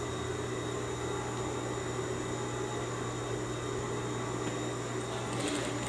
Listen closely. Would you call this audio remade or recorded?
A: recorded